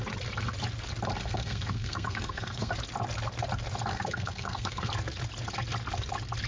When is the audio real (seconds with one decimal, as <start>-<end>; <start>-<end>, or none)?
0.0-1.2; 2.7-3.9; 4.9-6.5